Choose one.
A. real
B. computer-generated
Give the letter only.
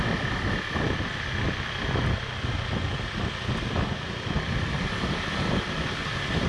A